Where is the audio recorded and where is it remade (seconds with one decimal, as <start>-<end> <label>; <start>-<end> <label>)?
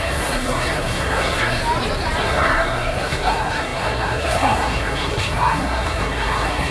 0.0-1.6 remade; 1.6-2.2 recorded; 2.2-6.7 remade